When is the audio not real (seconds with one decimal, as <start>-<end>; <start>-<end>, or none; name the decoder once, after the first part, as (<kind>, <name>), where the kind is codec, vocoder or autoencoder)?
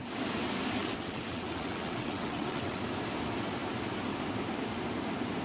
0.8-2.8 (vocoder, WaveNeXt)